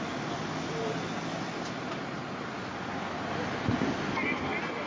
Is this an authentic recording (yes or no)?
yes